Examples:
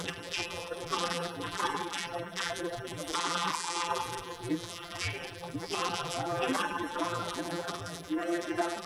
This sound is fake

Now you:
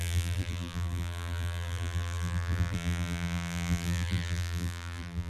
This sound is fake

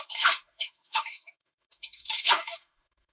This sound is fake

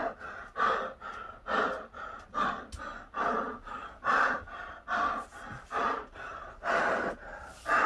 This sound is real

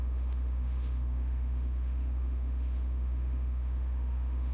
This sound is fake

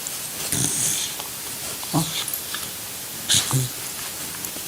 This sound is real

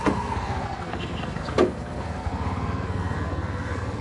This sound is fake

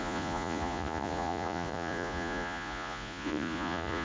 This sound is fake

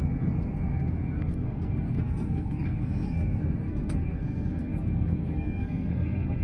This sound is fake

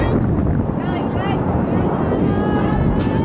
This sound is real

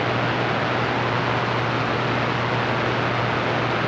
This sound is real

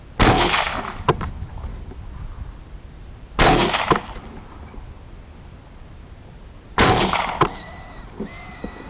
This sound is real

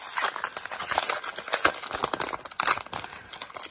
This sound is real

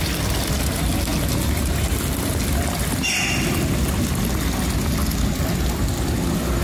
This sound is real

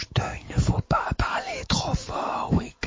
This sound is fake